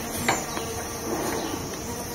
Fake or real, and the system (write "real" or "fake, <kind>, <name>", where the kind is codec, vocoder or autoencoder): real